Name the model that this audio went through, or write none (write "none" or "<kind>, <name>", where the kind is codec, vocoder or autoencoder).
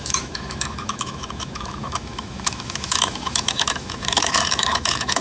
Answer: autoencoder, DAC-VAE